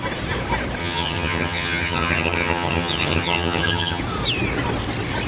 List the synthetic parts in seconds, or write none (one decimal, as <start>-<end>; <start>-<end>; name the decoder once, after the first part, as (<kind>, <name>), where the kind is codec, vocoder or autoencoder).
0.8-4.0 (vocoder, HiFi-GAN)